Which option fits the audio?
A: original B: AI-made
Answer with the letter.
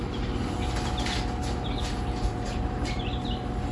B